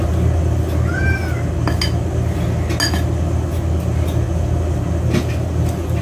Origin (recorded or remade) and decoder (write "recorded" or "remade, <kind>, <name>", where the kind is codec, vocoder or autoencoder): recorded